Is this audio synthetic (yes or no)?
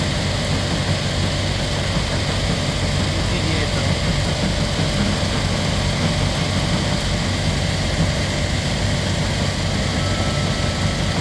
no